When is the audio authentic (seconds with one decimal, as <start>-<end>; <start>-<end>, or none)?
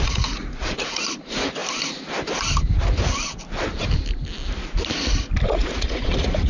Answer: 1.6-5.5